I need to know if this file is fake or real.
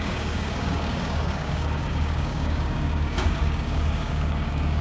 fake